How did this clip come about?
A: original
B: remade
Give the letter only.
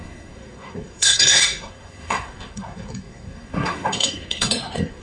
B